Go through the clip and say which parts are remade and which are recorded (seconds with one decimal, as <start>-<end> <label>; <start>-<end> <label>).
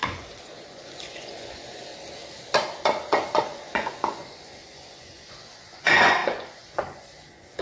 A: 0.0-1.9 remade; 1.9-3.3 recorded; 3.3-7.6 remade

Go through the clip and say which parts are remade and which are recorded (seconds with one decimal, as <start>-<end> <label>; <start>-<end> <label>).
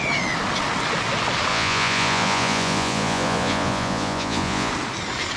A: 0.0-1.5 recorded; 1.5-4.7 remade; 4.7-5.4 recorded